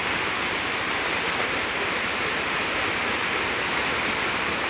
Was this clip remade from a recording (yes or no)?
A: no